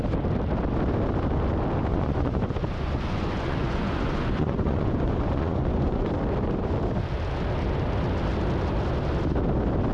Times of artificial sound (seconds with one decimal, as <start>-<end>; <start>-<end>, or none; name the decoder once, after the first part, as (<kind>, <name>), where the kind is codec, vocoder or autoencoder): 1.9-6.1 (vocoder, Vocos)

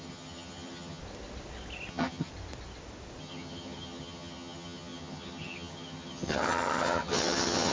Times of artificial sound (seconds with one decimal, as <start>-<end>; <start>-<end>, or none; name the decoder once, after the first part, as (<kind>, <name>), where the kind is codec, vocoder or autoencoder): 0.0-1.0 (vocoder, HiFi-GAN); 1.9-2.3; 3.2-7.7

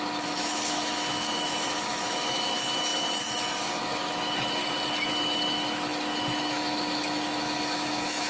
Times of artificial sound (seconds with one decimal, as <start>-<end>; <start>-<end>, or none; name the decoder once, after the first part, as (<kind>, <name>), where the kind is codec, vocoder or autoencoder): 0.0-4.6 (autoencoder, DAC-VAE); 5.1-8.3

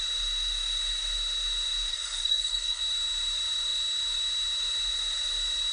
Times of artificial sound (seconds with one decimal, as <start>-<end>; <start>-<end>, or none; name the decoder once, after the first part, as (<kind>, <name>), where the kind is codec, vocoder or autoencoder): 1.9-2.8 (codec, SNAC)